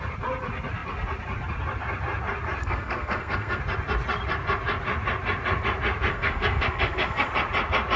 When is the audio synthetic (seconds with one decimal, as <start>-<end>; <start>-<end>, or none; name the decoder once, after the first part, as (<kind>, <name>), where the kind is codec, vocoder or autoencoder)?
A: 2.6-3.6 (codec, SNAC); 6.1-7.3